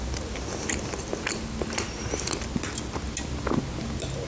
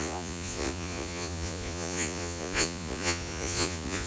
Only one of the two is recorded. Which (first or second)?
first